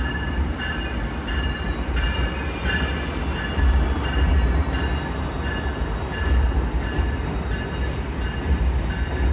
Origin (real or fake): real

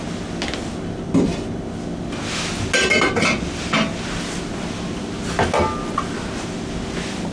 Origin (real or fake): real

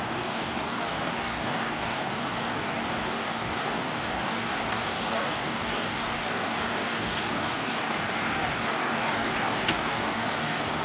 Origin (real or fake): fake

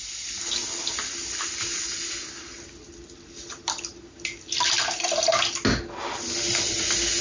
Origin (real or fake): real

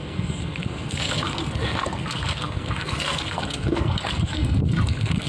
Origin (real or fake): fake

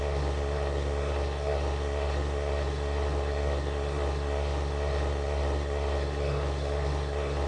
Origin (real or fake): fake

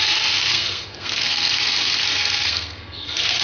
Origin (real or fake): fake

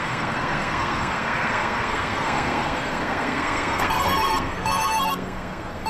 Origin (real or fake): fake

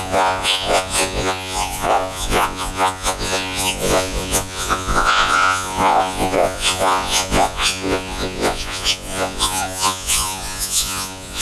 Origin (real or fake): fake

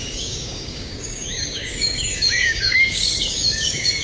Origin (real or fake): fake